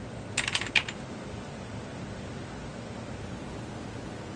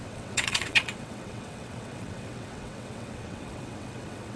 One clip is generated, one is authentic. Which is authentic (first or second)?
first